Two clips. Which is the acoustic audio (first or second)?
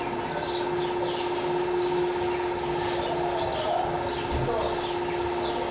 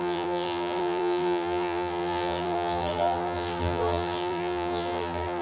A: first